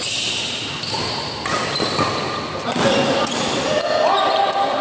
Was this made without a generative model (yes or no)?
yes